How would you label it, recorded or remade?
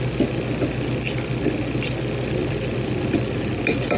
recorded